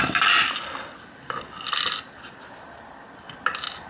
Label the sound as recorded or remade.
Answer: recorded